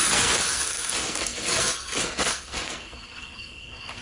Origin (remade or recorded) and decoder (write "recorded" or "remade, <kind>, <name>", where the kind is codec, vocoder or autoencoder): remade, codec, SNAC